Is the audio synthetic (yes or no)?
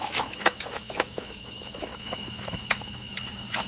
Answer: yes